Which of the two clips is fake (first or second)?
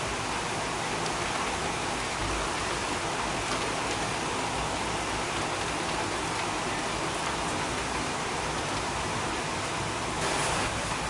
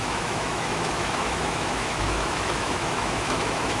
second